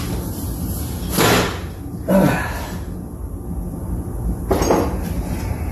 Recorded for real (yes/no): yes